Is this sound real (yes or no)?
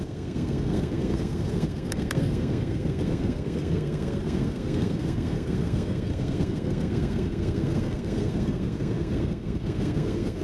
no